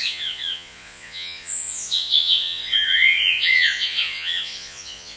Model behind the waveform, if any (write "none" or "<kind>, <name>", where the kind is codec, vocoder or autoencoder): vocoder, Vocos